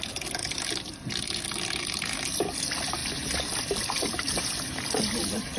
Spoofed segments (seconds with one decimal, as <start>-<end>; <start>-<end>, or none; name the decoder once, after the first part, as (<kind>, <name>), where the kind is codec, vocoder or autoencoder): 3.0-5.6 (vocoder, BigVGAN v2)